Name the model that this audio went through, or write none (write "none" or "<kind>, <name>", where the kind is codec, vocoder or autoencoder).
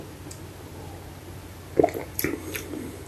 none